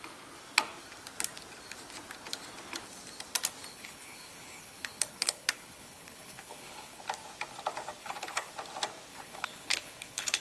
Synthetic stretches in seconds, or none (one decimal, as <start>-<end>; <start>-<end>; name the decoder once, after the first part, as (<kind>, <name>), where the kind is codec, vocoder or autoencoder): 3.7-7.0 (codec, HILCodec); 8.0-8.5; 9.1-10.4